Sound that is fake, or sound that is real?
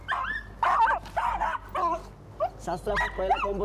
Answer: real